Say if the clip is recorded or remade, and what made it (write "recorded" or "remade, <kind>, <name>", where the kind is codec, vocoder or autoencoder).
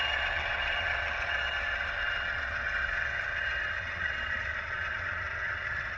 remade, vocoder, Vocos